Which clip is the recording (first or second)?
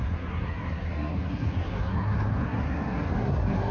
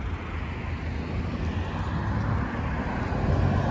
second